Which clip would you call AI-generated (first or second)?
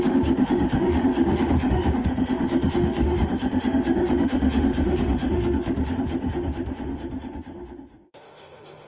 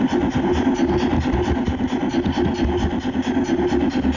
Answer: first